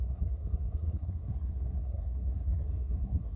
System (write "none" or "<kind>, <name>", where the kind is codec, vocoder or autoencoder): codec, SNAC